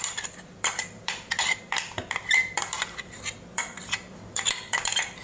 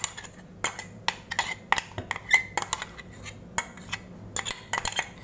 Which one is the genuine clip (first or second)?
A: second